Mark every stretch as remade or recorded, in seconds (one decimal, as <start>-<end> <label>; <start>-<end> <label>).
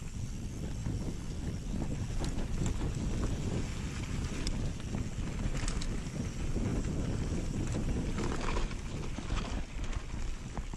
0.0-6.7 recorded; 6.7-8.3 remade; 8.3-10.8 recorded